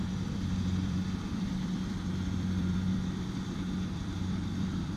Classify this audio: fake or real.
fake